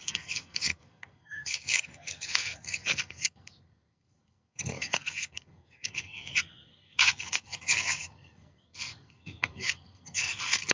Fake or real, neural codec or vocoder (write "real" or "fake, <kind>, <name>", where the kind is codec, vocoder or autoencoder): fake, codec, SNAC